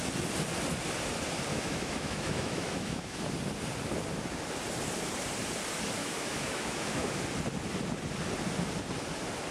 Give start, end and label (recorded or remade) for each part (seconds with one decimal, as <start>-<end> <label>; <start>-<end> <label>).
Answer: 0.0-1.5 recorded; 1.5-3.2 remade; 3.2-6.0 recorded; 6.0-7.2 remade; 7.2-9.5 recorded